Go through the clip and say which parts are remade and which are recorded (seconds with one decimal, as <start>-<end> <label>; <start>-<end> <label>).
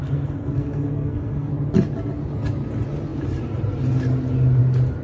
0.0-1.5 remade; 1.5-5.0 recorded